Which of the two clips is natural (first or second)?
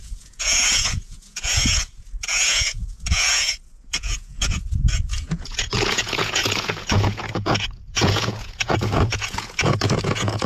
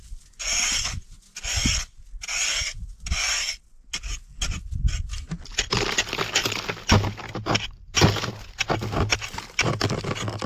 second